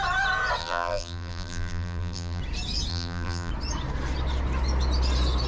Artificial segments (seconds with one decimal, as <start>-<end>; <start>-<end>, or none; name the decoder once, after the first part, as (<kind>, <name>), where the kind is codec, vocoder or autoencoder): 0.6-2.4 (vocoder, BigVGAN v2); 2.9-3.5